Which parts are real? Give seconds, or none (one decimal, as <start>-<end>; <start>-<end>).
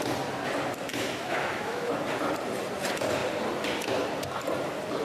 0.0-0.9; 1.9-5.0